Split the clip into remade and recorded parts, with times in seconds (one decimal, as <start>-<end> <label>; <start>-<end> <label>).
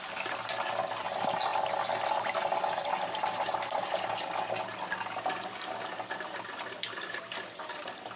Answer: 0.0-8.2 remade